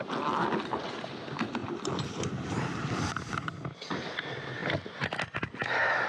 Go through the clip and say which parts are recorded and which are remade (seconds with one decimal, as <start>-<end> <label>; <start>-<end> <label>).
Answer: 0.0-6.1 recorded